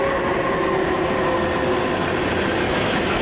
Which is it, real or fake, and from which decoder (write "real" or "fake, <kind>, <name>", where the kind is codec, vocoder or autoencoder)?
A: real